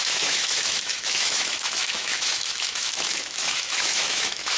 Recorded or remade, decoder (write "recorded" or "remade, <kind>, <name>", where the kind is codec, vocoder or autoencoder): remade, autoencoder, DAC-VAE